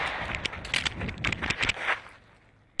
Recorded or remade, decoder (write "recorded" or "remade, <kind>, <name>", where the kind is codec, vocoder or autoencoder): recorded